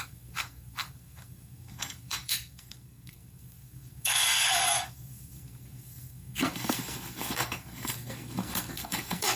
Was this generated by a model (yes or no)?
yes